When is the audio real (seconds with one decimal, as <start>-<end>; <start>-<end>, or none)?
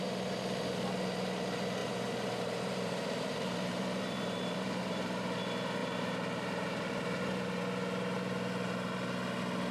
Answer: 0.0-1.8; 5.3-5.8; 7.6-9.7